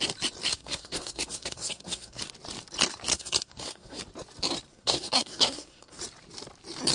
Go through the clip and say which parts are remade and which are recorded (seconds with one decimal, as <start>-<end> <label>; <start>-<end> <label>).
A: 0.0-0.5 recorded; 0.5-2.2 remade; 2.2-3.1 recorded; 3.1-4.0 remade; 4.0-4.7 recorded; 4.7-6.0 remade; 6.0-6.9 recorded